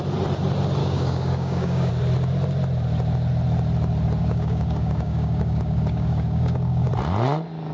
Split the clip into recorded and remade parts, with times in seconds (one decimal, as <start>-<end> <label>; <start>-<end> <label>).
0.0-0.8 recorded; 0.8-1.9 remade; 1.9-4.2 recorded; 4.2-6.9 remade; 6.9-7.7 recorded